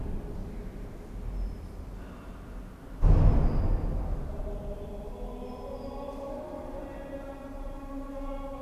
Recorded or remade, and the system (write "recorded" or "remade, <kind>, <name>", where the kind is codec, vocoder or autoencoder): recorded